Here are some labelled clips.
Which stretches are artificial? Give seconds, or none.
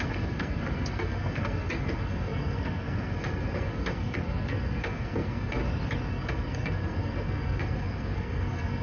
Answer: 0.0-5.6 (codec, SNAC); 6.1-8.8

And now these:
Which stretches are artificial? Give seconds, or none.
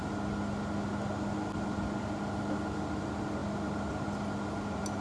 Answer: none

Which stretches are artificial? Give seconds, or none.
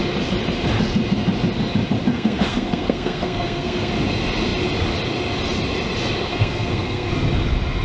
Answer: 2.1-3.9 (codec, SNAC); 6.3-7.1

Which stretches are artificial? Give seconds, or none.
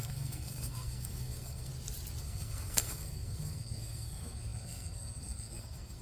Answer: 0.0-1.7 (codec, SNAC); 2.2-6.0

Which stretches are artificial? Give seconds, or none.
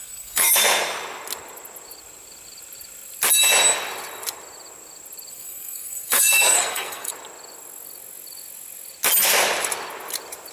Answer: 0.0-0.5 (codec, SNAC); 5.3-7.1